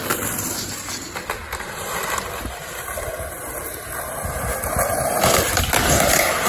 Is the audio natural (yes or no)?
yes